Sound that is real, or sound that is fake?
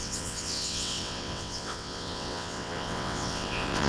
fake